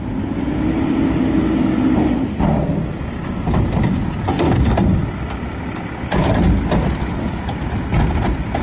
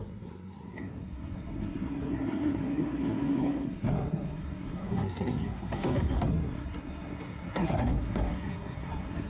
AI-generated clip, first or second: second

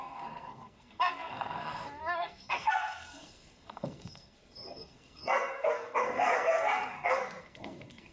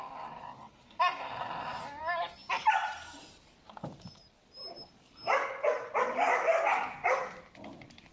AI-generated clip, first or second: first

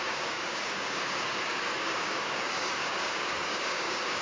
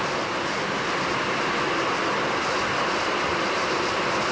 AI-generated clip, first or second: first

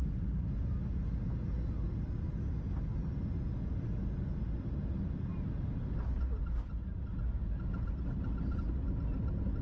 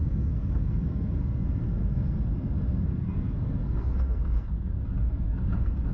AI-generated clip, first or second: second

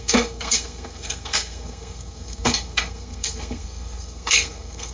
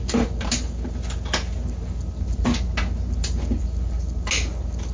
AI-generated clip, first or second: first